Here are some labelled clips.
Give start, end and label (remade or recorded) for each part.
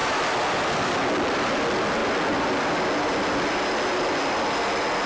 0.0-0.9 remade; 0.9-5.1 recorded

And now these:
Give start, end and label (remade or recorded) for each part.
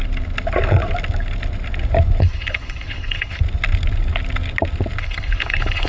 0.0-2.2 recorded; 2.2-3.4 remade; 3.4-5.0 recorded; 5.0-5.9 remade